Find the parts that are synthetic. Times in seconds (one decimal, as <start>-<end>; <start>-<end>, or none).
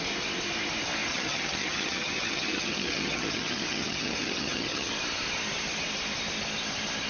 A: 1.1-4.9